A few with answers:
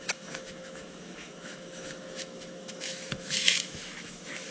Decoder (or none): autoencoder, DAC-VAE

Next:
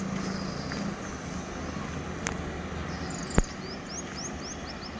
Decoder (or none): none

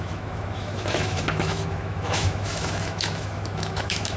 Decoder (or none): autoencoder, DAC-VAE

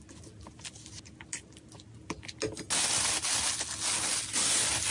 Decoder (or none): none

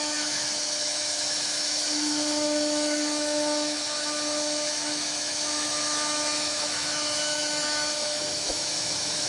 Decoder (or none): autoencoder, DAC-VAE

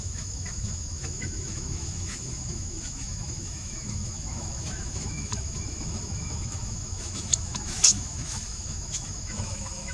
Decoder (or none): autoencoder, DAC-VAE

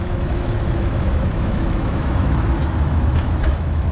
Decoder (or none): autoencoder, DAC-VAE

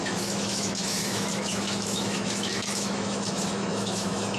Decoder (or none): autoencoder, DAC-VAE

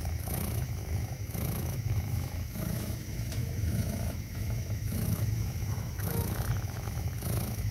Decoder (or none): autoencoder, DAC-VAE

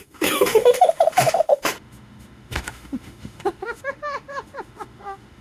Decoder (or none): autoencoder, DAC-VAE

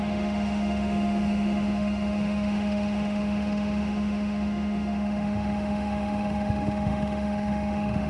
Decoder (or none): autoencoder, DAC-VAE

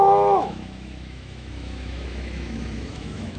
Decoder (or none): autoencoder, DAC-VAE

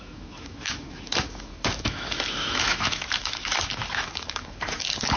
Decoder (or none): autoencoder, DAC-VAE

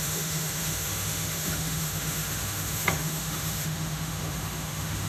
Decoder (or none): autoencoder, DAC-VAE